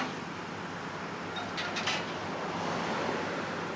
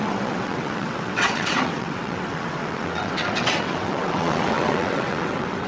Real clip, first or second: first